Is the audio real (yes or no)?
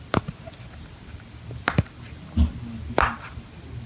yes